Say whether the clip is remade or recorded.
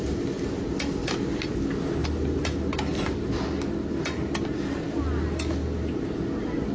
recorded